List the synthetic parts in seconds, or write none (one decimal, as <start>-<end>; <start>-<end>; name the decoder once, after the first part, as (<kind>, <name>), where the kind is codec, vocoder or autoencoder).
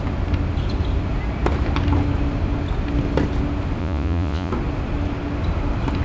3.8-4.5 (vocoder, Vocos)